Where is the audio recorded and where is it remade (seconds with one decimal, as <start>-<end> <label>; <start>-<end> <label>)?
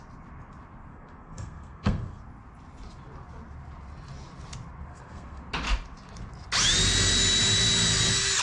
0.0-0.9 recorded; 0.9-2.2 remade; 2.2-4.9 recorded; 4.9-5.4 remade; 5.4-8.4 recorded